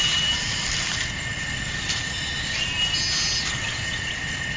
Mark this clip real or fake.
real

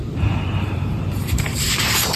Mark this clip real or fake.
fake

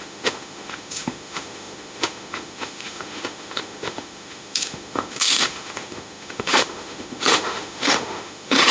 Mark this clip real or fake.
fake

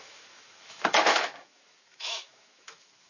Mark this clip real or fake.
fake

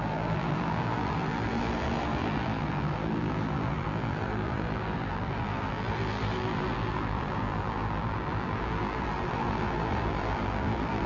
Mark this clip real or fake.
fake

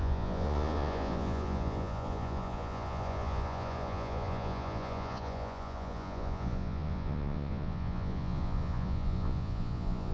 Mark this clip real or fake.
fake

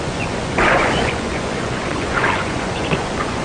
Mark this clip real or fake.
fake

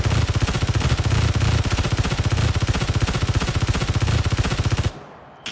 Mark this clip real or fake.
real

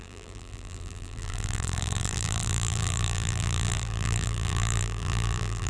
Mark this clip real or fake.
fake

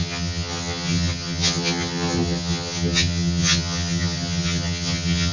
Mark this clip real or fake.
fake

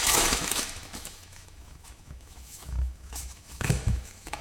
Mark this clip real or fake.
fake